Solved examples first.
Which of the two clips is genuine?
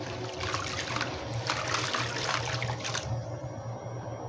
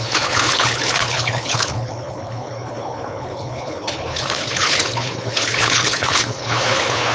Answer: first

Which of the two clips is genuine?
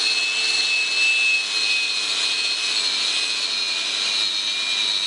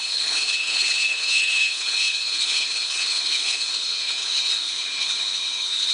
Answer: first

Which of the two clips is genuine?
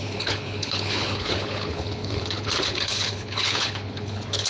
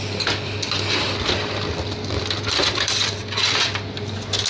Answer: second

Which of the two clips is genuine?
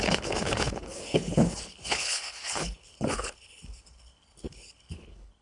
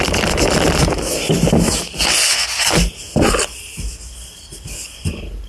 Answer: second